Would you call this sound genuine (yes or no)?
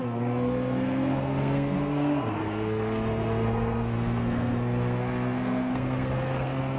no